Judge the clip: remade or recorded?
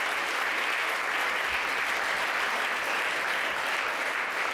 recorded